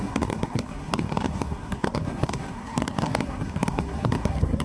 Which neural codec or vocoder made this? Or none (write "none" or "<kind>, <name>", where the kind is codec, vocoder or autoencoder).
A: codec, SNAC